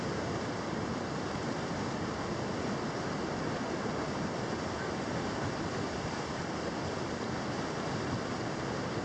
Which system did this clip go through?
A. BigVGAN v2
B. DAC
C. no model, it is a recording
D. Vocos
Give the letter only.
C